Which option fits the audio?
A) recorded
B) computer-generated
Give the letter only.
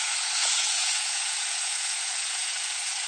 B